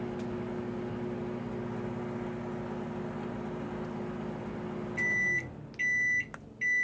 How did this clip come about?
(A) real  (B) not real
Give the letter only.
A